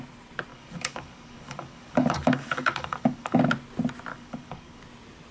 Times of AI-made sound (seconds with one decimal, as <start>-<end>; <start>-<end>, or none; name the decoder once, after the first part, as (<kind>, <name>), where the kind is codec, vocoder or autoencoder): 0.5-3.4 (codec, DAC); 4.1-4.8